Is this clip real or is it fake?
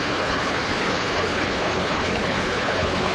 fake